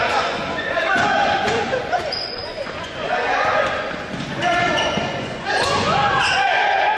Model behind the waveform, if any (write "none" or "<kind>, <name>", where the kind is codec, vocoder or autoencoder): vocoder, Vocos